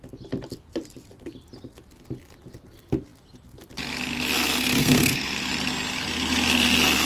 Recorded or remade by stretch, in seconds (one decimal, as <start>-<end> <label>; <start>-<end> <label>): 0.0-4.8 recorded; 4.8-5.5 remade; 5.5-7.1 recorded